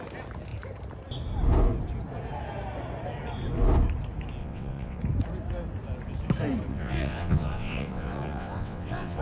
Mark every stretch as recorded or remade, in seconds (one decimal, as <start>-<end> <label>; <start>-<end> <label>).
0.0-4.4 recorded; 4.4-5.0 remade; 5.0-6.7 recorded; 6.7-9.2 remade